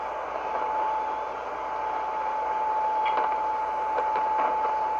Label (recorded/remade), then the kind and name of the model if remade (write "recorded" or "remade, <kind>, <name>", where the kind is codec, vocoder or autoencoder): recorded